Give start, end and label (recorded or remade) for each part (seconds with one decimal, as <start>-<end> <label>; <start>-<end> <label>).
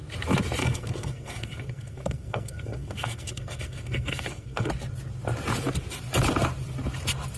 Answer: 0.0-0.6 recorded; 0.6-4.7 remade; 4.7-7.4 recorded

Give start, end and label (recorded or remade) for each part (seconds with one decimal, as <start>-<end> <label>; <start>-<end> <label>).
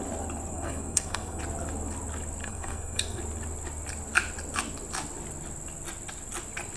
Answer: 0.0-0.5 recorded; 0.5-1.4 remade; 1.4-2.4 recorded; 2.4-3.2 remade; 3.2-6.8 recorded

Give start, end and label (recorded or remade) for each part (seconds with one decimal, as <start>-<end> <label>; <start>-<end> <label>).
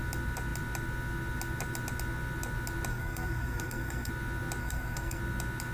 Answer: 0.0-2.9 recorded; 2.9-4.1 remade; 4.1-4.6 recorded; 4.6-5.2 remade; 5.2-5.7 recorded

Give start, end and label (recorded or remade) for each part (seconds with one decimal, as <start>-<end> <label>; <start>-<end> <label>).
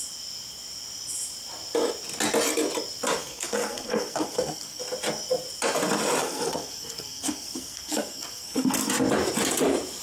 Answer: 0.0-3.2 recorded; 3.2-4.8 remade; 4.8-6.2 recorded; 6.2-8.9 remade; 8.9-10.0 recorded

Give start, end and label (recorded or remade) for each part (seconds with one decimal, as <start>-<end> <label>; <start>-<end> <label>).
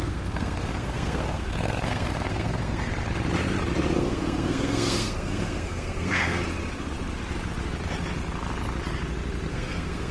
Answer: 0.0-2.9 remade; 2.9-4.0 recorded; 4.0-6.4 remade; 6.4-9.5 recorded; 9.5-10.1 remade